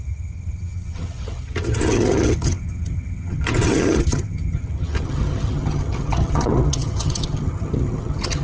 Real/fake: fake